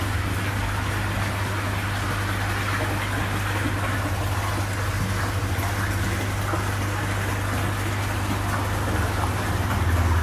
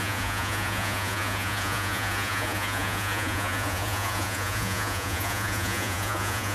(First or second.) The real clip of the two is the first